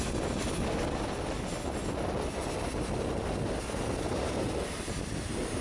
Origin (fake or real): real